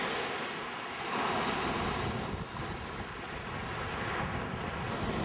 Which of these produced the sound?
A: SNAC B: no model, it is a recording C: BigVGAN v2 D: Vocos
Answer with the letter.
B